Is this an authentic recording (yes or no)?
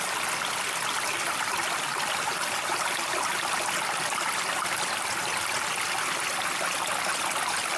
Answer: yes